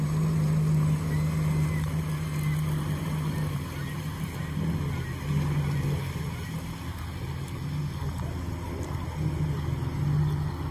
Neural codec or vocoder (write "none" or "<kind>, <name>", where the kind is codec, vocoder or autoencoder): none